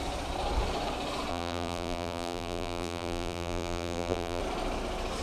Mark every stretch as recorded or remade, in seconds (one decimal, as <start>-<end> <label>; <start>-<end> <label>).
0.0-1.3 recorded; 1.3-4.4 remade; 4.4-5.2 recorded